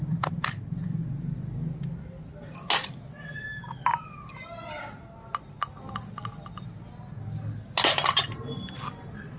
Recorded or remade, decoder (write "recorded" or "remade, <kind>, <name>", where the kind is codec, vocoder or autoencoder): recorded